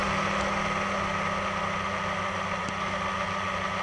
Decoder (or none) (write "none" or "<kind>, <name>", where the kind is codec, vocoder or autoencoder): none